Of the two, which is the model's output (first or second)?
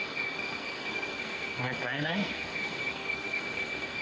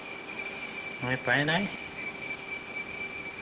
first